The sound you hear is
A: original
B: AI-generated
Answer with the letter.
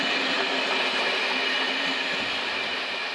A